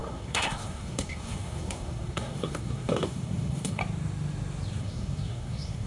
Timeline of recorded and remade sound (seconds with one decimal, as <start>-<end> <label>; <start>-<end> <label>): 0.0-3.8 remade; 3.8-4.8 recorded; 4.8-5.9 remade